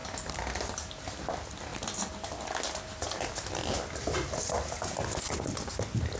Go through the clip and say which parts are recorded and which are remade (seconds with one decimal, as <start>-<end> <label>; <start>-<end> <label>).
0.0-6.2 recorded